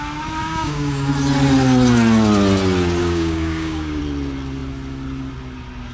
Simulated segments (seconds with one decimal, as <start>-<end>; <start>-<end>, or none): 0.4-1.1; 3.0-4.0